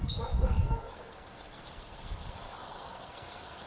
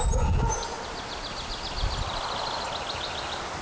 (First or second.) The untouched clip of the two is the second